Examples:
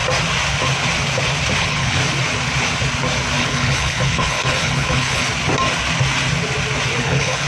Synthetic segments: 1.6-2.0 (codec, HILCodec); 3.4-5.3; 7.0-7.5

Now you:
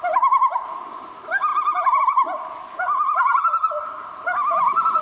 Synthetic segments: 0.0-5.0 (vocoder, BigVGAN v2)

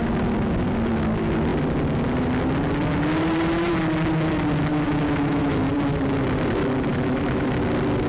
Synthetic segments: 4.7-5.7 (autoencoder, DAC-VAE); 6.9-7.5

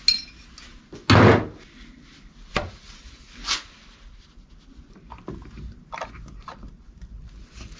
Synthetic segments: none